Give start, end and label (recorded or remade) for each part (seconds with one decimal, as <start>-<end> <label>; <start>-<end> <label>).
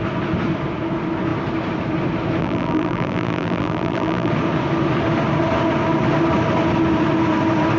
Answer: 0.0-2.4 recorded; 2.4-4.3 remade; 4.3-7.8 recorded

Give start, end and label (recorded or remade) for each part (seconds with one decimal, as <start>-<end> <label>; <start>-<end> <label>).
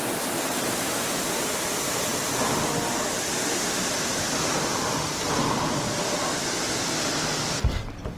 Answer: 0.0-8.2 recorded